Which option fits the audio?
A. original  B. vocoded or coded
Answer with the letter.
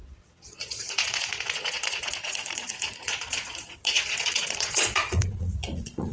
B